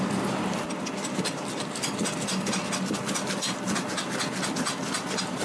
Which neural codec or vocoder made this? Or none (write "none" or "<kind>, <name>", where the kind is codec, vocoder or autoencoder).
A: none